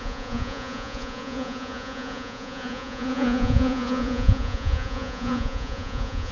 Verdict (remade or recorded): remade